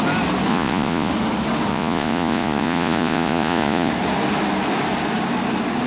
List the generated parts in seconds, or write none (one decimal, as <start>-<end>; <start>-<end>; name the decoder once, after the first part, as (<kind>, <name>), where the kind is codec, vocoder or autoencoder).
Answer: 0.5-1.1 (vocoder, Vocos); 1.7-3.9